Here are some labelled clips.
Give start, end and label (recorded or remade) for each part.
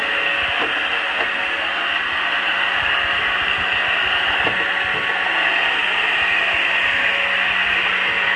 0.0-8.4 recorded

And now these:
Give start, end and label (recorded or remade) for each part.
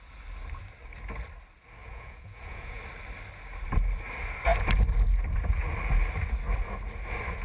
0.0-1.8 recorded; 1.8-2.8 remade; 2.8-7.4 recorded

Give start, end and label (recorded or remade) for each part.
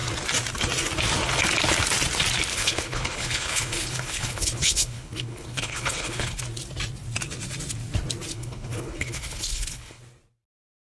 0.0-2.5 recorded; 2.5-6.4 remade; 6.4-8.3 recorded; 8.3-10.0 remade; 10.0-10.9 recorded